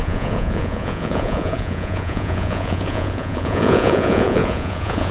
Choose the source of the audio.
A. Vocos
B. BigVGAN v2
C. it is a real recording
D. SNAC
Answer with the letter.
A